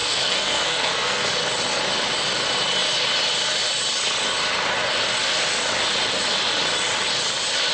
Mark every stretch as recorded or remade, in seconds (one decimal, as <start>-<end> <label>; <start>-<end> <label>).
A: 0.0-1.3 remade; 1.3-7.7 recorded